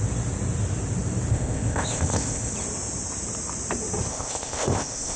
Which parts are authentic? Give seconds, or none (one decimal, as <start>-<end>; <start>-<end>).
0.0-1.3; 2.5-4.1